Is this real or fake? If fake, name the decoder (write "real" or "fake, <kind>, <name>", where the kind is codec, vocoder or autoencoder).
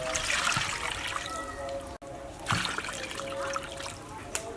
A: real